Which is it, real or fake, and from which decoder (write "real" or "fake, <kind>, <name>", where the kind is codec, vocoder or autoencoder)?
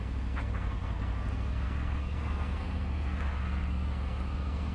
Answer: fake, codec, SNAC